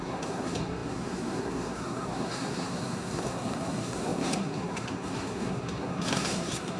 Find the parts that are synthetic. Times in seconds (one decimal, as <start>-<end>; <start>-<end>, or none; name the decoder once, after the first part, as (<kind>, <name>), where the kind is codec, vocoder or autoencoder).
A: 0.0-6.8 (codec, SNAC)